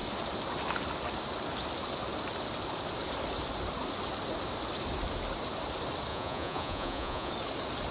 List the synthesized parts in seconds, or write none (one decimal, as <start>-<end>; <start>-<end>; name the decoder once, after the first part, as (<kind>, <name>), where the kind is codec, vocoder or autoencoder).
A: 6.1-7.3 (vocoder, Vocos)